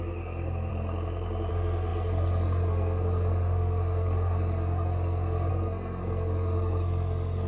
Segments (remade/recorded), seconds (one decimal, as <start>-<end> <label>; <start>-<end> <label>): 0.0-0.7 remade; 0.7-1.5 recorded; 1.5-7.5 remade